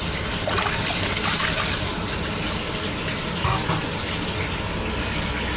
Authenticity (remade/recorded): recorded